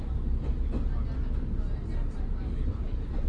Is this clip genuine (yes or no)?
yes